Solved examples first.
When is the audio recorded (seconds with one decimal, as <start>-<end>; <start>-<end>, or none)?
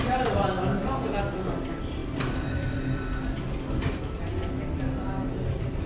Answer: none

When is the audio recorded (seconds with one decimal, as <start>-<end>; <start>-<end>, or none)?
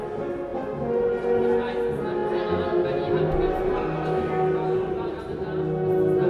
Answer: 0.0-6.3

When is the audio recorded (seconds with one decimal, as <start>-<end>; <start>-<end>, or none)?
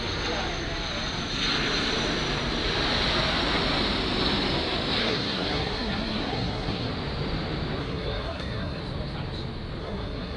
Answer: 0.0-5.0; 6.9-7.8; 8.8-9.8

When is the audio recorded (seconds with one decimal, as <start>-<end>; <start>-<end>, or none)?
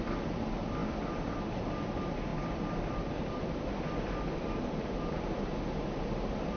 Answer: 0.0-6.6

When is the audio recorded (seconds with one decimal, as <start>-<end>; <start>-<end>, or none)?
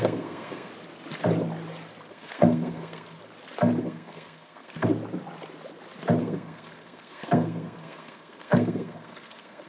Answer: 0.7-2.1; 3.2-3.8; 4.9-6.2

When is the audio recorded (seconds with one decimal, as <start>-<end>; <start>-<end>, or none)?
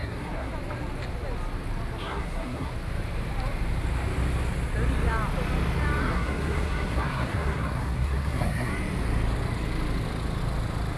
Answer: 0.5-2.0; 2.7-6.0; 8.7-11.0